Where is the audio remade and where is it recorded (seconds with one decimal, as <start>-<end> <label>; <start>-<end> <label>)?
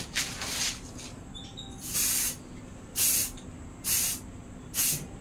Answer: 0.0-5.2 recorded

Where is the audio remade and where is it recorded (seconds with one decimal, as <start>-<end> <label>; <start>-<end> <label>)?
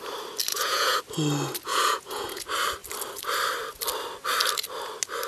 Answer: 0.0-0.5 recorded; 0.5-1.0 remade; 1.0-1.7 recorded; 1.7-2.4 remade; 2.4-5.3 recorded